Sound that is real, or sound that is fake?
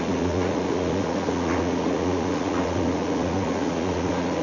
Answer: fake